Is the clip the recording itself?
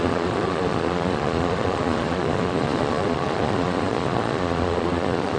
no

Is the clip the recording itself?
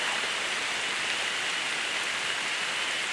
yes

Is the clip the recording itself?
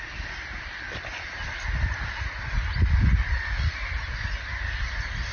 yes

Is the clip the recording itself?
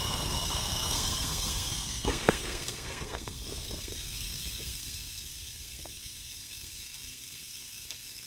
no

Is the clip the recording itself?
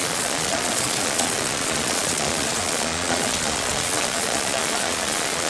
no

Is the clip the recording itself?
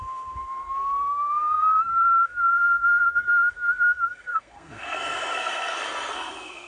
no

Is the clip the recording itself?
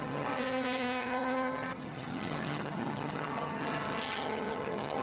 no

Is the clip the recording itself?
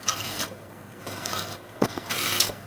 no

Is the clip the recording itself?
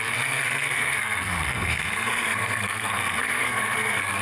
no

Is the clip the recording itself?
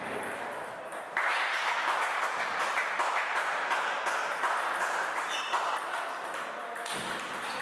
yes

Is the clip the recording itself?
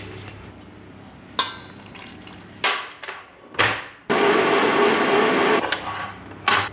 yes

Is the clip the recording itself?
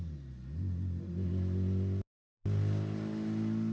yes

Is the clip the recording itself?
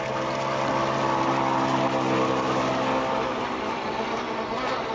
yes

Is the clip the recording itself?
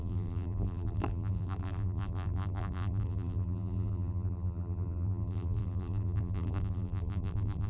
no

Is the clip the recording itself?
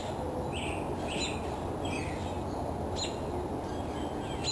yes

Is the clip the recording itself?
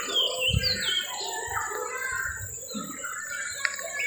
yes